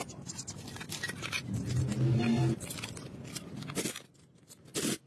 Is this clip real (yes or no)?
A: yes